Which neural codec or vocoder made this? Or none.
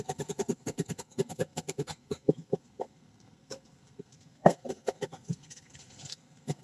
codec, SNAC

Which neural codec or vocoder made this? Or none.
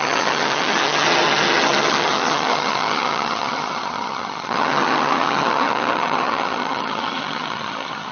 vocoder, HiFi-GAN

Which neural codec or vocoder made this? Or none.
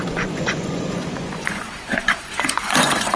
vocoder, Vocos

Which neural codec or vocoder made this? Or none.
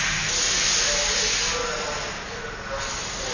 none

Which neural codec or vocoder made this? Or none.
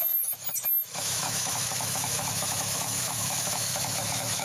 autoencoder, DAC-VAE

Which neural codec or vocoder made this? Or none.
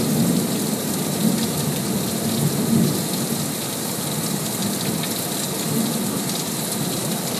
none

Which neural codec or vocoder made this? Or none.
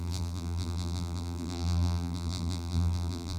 vocoder, BigVGAN v2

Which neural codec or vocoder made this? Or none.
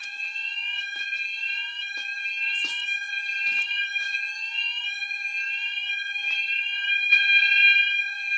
vocoder, Vocos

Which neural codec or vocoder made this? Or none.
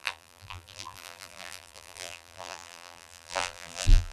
vocoder, BigVGAN v2